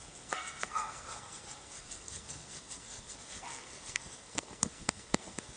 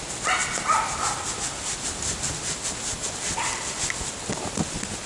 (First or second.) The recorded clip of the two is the second